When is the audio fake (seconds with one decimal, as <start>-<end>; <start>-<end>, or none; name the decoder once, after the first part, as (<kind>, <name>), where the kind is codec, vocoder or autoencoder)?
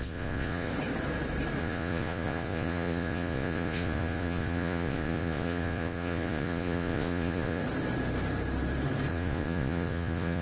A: 0.0-0.7 (vocoder, Vocos); 1.6-7.6; 9.1-10.4